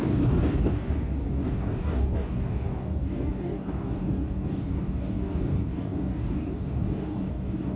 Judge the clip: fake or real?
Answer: fake